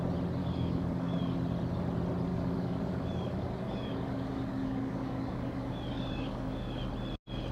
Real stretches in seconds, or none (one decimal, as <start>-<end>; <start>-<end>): 0.0-0.4; 1.2-2.3; 6.8-7.5